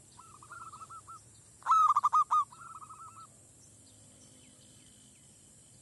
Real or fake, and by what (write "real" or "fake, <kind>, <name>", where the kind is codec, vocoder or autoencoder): real